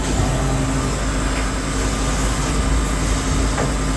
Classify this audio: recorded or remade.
recorded